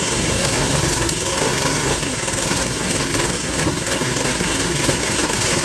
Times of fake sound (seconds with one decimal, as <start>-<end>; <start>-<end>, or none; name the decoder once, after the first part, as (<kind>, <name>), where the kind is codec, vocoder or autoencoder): 0.0-5.6 (codec, SNAC)